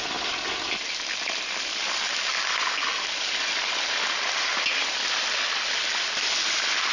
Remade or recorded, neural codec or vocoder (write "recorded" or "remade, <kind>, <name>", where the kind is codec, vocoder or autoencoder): recorded